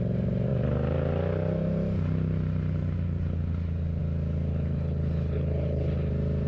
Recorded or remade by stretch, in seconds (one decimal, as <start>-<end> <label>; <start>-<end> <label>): 0.0-4.5 recorded; 4.5-6.1 remade; 6.1-6.5 recorded